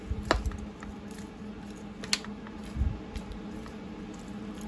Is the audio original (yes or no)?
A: yes